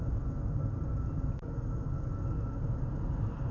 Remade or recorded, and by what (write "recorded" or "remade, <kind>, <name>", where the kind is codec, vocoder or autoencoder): recorded